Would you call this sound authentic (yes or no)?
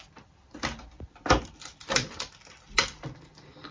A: no